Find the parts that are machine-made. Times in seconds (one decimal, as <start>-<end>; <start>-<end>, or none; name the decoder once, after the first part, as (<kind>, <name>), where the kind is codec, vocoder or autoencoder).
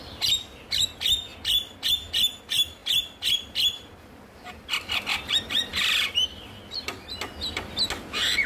1.3-1.9 (vocoder, BigVGAN v2); 2.8-6.6